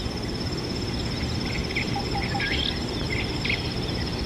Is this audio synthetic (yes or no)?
no